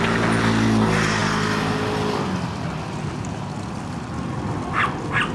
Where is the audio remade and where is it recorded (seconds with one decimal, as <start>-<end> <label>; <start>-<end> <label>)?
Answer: 0.0-5.3 recorded